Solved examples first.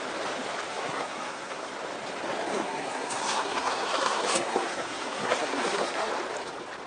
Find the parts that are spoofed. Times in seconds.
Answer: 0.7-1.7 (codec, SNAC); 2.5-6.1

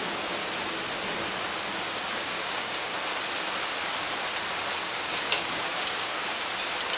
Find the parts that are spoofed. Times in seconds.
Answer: 0.0-0.4 (codec, DAC); 2.2-2.9; 4.8-6.1

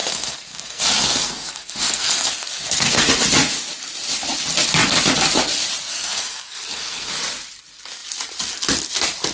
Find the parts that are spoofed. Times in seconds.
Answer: 0.0-3.1 (codec, SNAC); 5.9-7.1

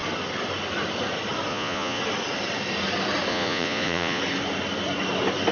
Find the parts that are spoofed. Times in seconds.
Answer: 1.5-2.0 (vocoder, Vocos); 3.3-4.2